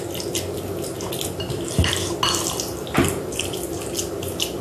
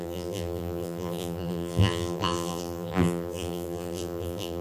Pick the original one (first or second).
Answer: first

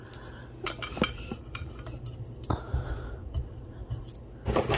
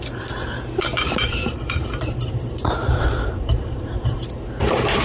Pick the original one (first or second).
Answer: first